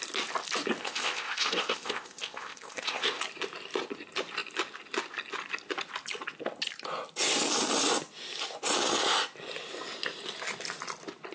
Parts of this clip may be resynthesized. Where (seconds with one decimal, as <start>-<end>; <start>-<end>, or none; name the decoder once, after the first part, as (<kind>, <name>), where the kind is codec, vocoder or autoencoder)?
0.8-3.2 (codec, ZipCodec)